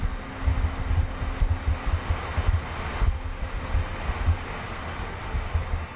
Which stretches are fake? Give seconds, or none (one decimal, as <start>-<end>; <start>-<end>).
none